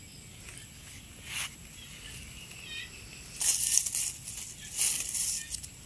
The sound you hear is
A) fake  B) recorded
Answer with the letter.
B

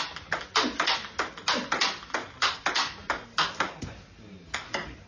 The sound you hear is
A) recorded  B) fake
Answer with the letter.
A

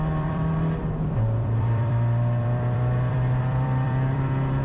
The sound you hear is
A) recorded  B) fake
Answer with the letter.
B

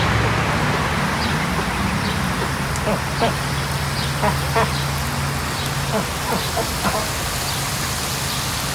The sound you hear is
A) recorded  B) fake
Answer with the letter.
A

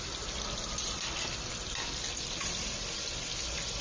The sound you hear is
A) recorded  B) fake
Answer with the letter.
B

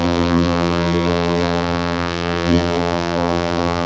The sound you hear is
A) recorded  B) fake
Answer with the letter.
B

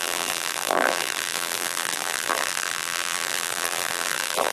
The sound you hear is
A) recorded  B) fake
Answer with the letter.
B